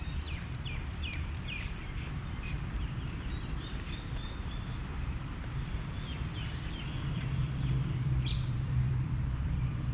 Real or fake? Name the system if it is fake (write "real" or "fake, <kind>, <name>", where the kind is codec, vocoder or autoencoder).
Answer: fake, vocoder, BigVGAN v2